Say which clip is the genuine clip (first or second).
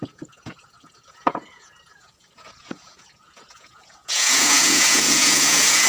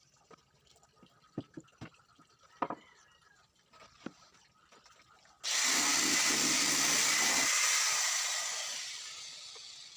second